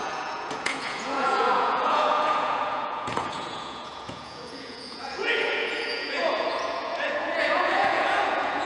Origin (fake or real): fake